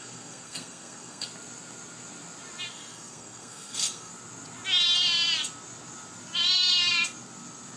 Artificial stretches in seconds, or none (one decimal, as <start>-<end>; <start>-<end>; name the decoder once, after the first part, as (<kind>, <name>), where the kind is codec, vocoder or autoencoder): 0.0-1.3 (codec, SNAC); 2.7-4.1